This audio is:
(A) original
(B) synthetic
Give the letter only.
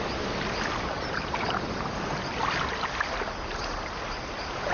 A